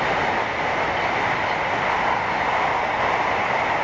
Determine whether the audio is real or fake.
real